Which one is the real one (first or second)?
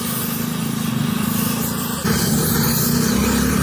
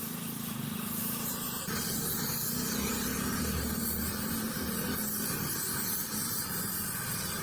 first